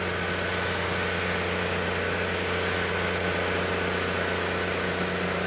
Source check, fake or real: real